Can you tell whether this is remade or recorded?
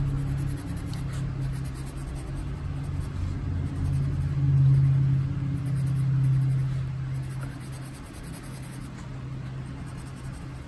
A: recorded